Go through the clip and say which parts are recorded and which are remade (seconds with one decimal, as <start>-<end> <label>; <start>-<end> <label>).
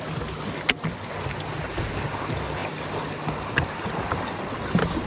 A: 0.0-5.1 recorded